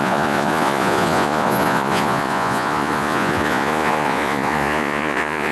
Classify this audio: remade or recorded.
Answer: remade